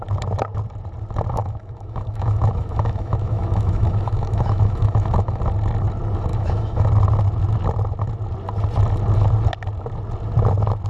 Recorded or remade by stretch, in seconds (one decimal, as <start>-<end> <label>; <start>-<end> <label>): 0.0-1.4 recorded; 1.4-5.4 remade; 5.4-6.3 recorded; 6.3-6.9 remade; 6.9-10.9 recorded